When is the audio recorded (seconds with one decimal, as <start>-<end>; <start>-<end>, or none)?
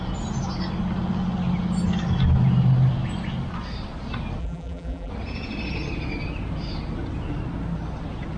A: 0.0-4.4; 5.1-8.4